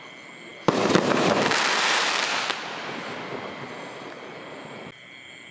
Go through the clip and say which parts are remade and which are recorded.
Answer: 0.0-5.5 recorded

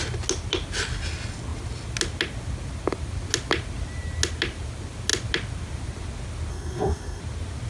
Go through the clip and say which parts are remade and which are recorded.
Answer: 0.0-6.5 recorded; 6.5-7.2 remade; 7.2-7.7 recorded

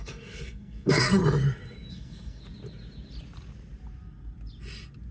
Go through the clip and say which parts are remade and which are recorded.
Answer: 0.0-1.2 remade; 1.2-1.9 recorded; 1.9-2.4 remade; 2.4-5.1 recorded